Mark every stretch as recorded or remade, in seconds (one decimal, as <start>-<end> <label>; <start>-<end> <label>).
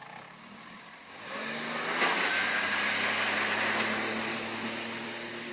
0.0-2.7 remade; 2.7-4.3 recorded; 4.3-5.5 remade